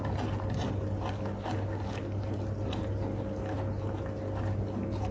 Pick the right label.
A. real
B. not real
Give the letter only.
A